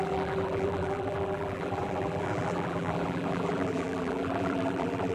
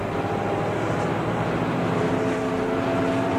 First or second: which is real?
second